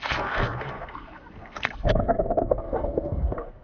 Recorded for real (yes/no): no